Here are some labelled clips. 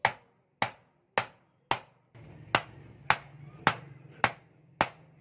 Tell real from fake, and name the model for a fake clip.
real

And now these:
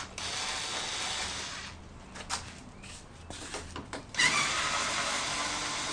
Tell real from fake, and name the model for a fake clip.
real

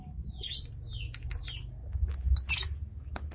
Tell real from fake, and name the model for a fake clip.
real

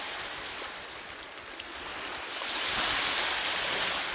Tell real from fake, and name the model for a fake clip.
real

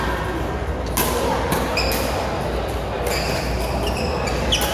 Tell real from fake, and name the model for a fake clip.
real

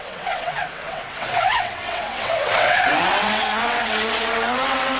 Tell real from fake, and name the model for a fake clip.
fake, vocoder, WaveNeXt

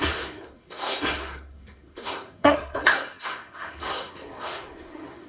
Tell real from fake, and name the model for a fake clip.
fake, codec, SNAC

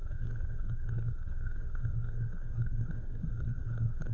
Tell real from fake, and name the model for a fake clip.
fake, codec, SNAC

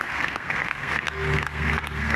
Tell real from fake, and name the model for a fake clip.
fake, codec, SNAC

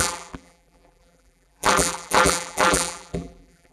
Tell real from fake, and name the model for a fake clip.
fake, vocoder, BigVGAN v2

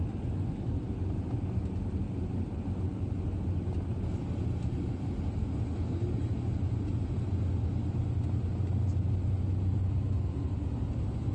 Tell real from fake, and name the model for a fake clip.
real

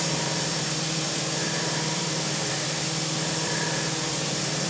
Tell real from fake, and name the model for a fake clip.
fake, vocoder, BigVGAN v2